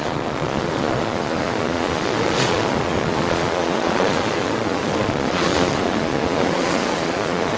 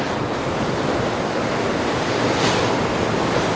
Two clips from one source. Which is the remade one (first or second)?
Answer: first